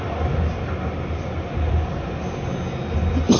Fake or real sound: real